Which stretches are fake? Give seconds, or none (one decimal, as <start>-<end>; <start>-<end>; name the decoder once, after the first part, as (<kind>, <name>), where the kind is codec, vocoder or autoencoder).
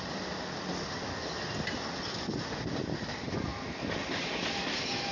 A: none